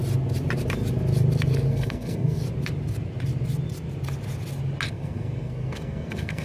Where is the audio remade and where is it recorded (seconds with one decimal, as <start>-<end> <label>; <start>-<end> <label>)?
0.0-1.7 recorded; 1.7-2.4 remade; 2.4-4.9 recorded; 4.9-6.4 remade